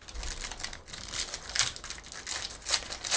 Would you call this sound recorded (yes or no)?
yes